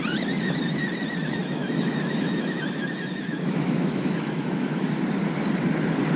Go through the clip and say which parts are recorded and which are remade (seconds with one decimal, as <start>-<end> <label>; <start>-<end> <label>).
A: 0.0-1.4 recorded; 1.4-4.9 remade; 4.9-6.2 recorded